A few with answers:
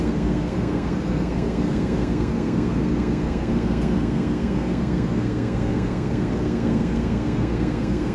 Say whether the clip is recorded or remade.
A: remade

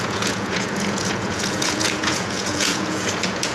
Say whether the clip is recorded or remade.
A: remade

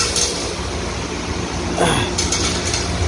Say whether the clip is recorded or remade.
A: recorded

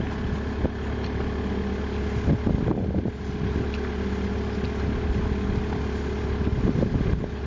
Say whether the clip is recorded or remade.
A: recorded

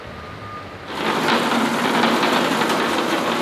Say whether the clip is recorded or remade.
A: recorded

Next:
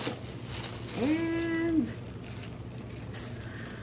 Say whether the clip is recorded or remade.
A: recorded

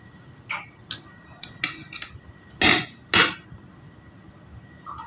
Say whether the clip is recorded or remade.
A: recorded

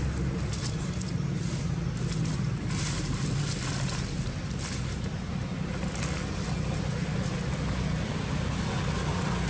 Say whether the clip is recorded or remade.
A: recorded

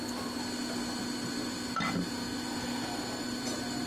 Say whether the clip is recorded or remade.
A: recorded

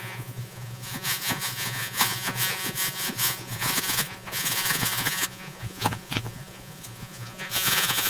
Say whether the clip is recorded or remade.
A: remade